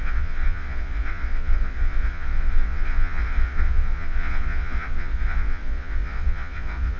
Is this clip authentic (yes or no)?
no